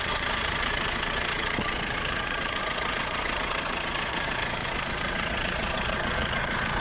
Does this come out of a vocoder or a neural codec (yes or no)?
yes